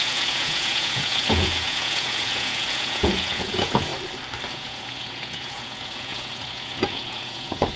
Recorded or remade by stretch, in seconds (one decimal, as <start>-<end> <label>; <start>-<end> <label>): 0.0-3.9 remade; 3.9-4.5 recorded; 4.5-7.8 remade